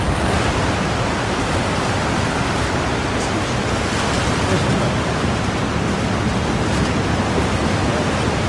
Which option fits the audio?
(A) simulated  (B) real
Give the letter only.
B